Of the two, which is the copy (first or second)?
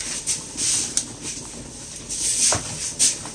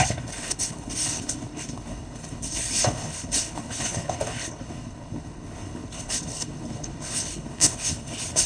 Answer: second